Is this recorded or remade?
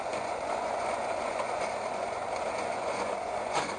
remade